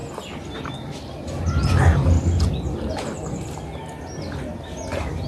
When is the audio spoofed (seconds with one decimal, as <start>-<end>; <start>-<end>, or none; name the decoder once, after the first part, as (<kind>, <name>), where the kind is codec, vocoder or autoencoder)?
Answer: none